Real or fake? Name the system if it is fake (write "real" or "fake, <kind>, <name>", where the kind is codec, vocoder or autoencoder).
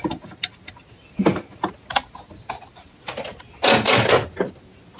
real